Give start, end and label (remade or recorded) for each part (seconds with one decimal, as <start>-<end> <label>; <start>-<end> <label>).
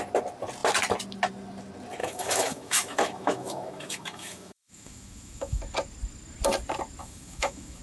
0.0-2.0 recorded; 2.0-5.6 remade; 5.6-7.0 recorded; 7.0-7.8 remade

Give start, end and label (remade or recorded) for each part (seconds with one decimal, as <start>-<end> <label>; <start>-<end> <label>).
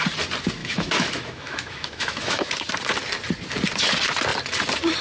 0.0-0.6 recorded; 0.6-2.5 remade; 2.5-5.0 recorded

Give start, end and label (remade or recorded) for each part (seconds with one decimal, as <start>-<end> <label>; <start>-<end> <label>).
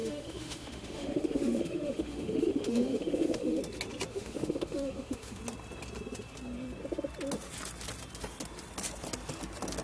0.0-3.6 remade; 3.6-4.1 recorded; 4.1-5.4 remade; 5.4-9.8 recorded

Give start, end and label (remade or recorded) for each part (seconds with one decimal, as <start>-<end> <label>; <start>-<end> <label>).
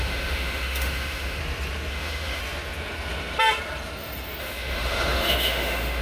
0.0-1.4 remade; 1.4-1.9 recorded; 1.9-2.4 remade; 2.4-4.4 recorded; 4.4-6.0 remade